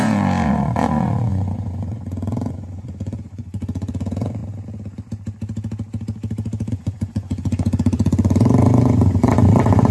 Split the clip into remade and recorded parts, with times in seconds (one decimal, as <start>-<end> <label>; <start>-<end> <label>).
0.0-4.4 remade; 4.4-6.7 recorded; 6.7-9.9 remade